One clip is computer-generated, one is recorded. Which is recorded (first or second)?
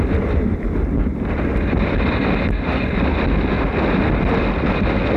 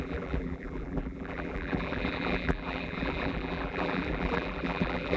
first